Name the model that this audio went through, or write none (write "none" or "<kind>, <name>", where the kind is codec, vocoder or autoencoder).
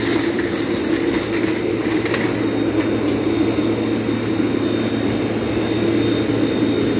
none